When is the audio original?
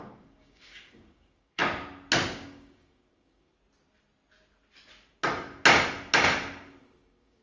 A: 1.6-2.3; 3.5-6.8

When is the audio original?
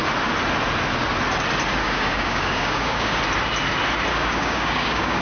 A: 0.0-1.8; 3.2-4.1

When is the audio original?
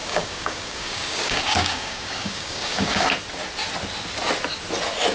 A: 3.1-5.1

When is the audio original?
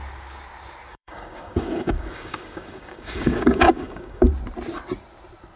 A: 0.0-0.9; 4.3-5.6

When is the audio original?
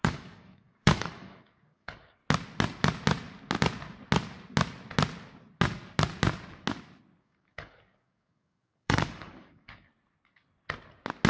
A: 2.2-7.2; 9.9-11.3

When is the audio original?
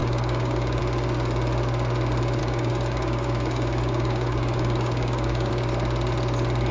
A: 0.8-2.4; 5.5-6.7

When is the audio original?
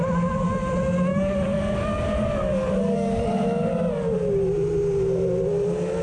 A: 0.0-1.1; 3.7-6.0